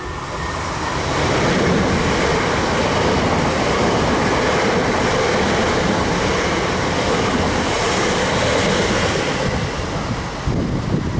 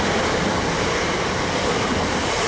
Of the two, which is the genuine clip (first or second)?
first